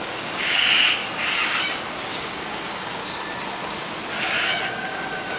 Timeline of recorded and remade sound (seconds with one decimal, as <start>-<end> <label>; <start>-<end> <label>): 0.0-1.0 remade; 1.0-2.1 recorded; 2.1-3.0 remade; 3.0-4.7 recorded; 4.7-5.4 remade